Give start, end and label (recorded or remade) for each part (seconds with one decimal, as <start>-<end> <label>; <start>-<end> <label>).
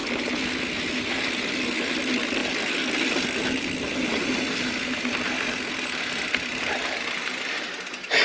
0.0-8.2 recorded